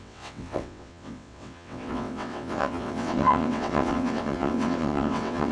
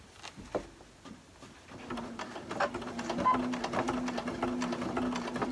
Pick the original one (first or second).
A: second